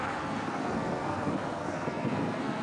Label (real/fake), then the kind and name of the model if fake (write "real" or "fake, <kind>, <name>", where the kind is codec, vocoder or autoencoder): fake, codec, SNAC